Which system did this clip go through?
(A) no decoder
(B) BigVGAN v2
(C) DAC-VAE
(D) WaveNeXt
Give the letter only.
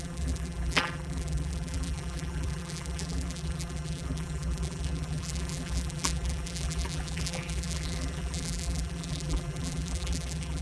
B